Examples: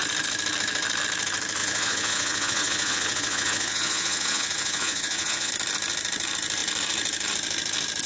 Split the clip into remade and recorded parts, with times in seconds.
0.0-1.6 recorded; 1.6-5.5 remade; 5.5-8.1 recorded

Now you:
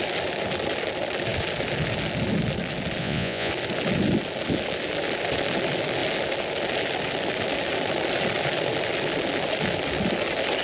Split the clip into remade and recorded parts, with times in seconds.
0.0-3.0 recorded; 3.0-3.5 remade; 3.5-10.6 recorded

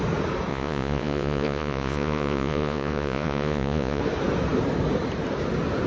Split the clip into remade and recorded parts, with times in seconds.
0.0-0.5 recorded; 0.5-4.0 remade; 4.0-5.9 recorded

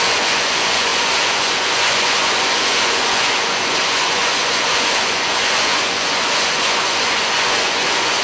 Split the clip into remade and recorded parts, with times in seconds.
0.0-8.2 remade

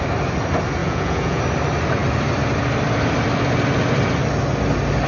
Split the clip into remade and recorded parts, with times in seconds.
0.0-0.8 recorded; 0.8-1.4 remade; 1.4-5.1 recorded